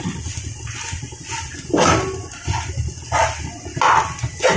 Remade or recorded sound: recorded